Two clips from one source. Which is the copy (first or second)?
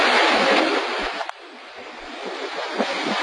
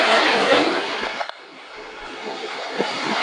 second